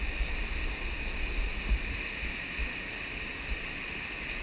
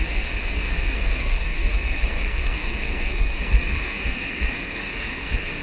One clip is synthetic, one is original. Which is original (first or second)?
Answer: first